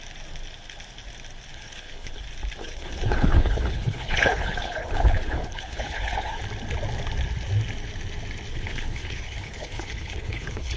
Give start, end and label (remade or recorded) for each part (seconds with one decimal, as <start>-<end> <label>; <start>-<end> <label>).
0.0-1.5 recorded; 1.5-2.2 remade; 2.2-2.6 recorded; 2.6-6.4 remade; 6.4-8.5 recorded; 8.5-10.8 remade